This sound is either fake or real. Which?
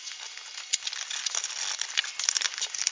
real